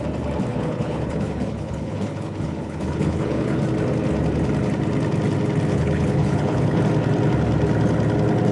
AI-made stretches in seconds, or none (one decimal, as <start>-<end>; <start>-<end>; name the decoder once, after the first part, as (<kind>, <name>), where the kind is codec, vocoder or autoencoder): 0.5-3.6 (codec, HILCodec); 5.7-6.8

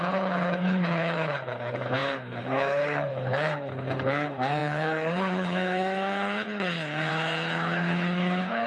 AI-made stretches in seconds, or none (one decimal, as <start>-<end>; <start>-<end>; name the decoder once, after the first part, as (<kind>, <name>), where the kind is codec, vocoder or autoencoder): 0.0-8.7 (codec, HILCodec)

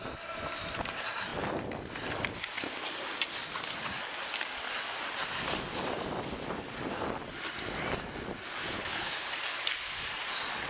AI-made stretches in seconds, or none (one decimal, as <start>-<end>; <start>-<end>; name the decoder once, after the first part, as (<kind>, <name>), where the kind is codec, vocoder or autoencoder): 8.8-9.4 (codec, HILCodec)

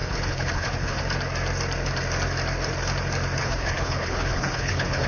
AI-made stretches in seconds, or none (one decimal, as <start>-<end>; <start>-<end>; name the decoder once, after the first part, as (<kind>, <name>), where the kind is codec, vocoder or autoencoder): 0.0-1.0 (codec, HILCodec); 3.4-5.1

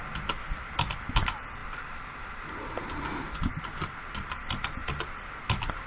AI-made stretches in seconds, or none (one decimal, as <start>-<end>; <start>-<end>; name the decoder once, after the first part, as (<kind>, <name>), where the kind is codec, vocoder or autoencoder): none